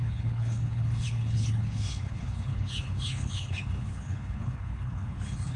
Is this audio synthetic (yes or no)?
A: yes